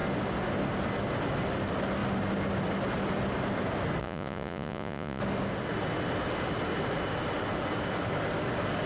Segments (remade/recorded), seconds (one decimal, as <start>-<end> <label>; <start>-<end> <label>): 0.0-4.0 recorded; 4.0-5.2 remade; 5.2-8.9 recorded